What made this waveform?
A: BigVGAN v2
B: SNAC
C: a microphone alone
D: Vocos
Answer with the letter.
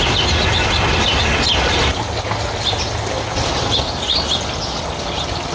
C